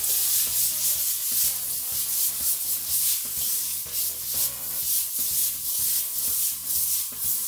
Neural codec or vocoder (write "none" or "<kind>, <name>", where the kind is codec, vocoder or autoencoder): none